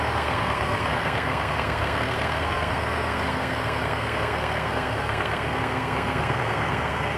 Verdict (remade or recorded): remade